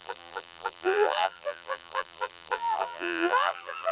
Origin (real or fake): fake